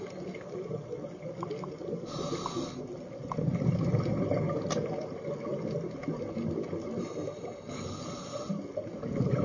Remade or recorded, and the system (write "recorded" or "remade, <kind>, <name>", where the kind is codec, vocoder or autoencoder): recorded